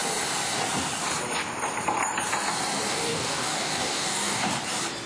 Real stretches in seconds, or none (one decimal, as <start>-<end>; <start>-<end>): 0.0-2.9; 4.5-5.1